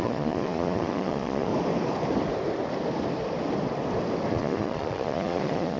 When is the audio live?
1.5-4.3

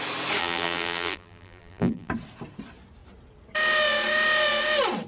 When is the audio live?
0.0-0.4; 2.1-5.1

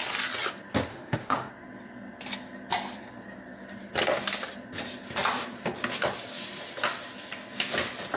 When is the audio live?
0.0-0.9; 1.5-8.2